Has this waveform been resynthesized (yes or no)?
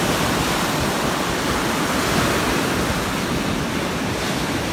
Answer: no